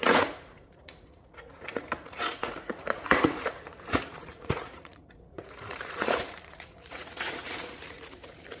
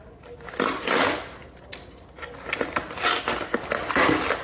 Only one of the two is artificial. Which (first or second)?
first